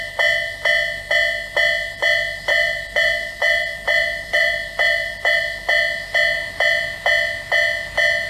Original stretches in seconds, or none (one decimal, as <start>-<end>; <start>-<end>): 0.0-2.5; 5.4-8.3

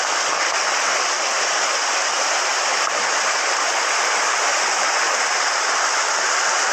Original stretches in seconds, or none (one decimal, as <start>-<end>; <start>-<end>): 0.0-6.7

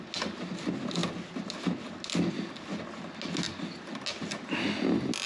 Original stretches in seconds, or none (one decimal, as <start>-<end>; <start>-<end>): 0.0-5.3

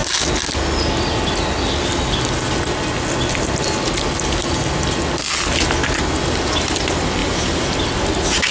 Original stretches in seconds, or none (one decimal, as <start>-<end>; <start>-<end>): 0.0-7.2; 7.8-8.5

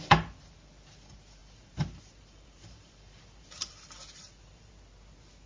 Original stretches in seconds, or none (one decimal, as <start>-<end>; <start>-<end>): 0.0-1.4; 4.7-5.5

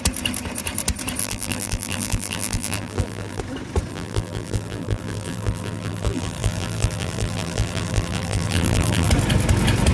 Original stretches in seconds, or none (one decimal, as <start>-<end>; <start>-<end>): 0.0-1.2; 3.4-3.9; 9.1-9.9

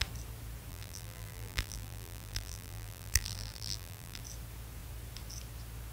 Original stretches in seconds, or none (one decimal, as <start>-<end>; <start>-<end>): 0.0-0.7; 4.2-5.9

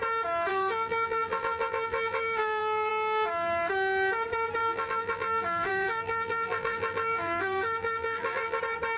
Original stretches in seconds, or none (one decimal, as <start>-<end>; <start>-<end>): 0.0-0.5; 2.9-4.6; 8.6-9.0